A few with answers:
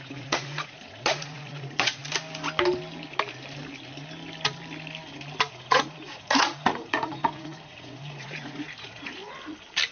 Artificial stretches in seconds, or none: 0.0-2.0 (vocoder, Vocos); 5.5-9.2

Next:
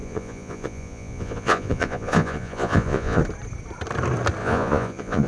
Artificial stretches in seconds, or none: 0.0-3.2 (vocoder, Vocos); 4.4-5.3

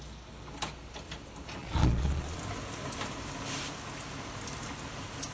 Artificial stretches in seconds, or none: 1.6-2.4 (vocoder, Vocos)

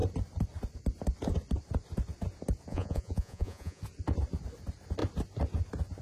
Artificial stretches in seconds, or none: 2.7-3.8 (vocoder, Vocos)

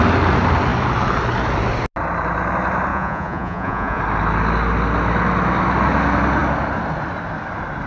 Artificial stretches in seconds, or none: 2.9-4.0 (vocoder, Vocos)

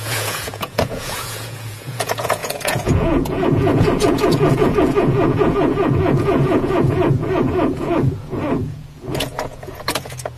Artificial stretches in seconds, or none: 0.0-10.4 (vocoder, Vocos)

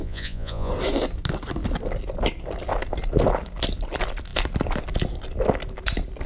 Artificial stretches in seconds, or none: 0.0-0.7 (vocoder, Vocos)

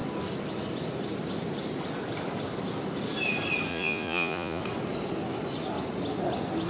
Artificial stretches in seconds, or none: 3.7-4.6 (vocoder, Vocos)